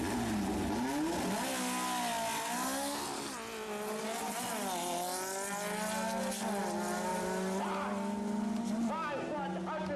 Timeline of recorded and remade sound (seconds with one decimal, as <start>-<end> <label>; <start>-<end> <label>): 0.0-10.0 recorded